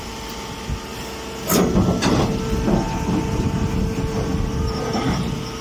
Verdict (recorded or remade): recorded